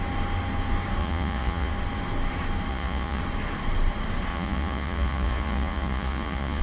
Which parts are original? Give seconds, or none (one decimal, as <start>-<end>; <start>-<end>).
0.0-1.0; 1.7-2.7; 3.2-4.3